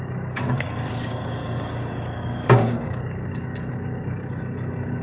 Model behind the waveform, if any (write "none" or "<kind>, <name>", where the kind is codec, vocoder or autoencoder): codec, DAC